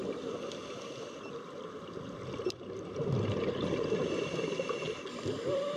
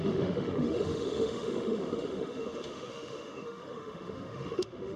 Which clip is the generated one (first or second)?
second